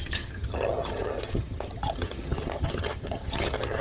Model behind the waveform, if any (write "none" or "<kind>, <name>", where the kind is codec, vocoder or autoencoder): vocoder, HiFi-GAN